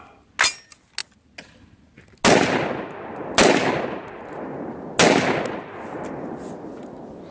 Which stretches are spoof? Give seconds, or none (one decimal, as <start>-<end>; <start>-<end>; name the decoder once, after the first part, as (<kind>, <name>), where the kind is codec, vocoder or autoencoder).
none